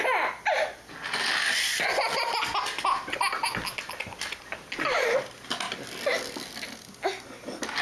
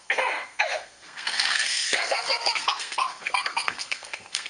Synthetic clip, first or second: second